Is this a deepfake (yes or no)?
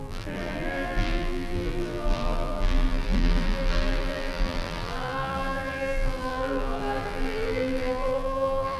yes